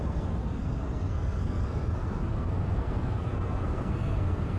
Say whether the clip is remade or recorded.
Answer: remade